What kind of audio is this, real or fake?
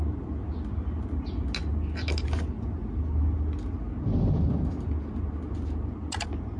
real